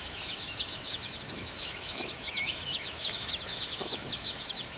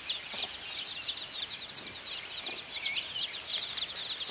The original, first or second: second